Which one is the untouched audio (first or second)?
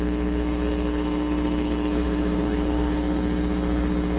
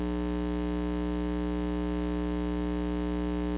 second